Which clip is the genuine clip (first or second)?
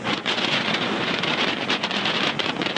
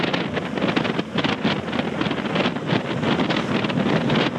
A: second